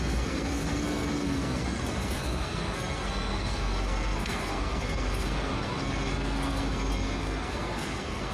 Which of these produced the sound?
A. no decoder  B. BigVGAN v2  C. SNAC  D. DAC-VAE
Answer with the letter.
C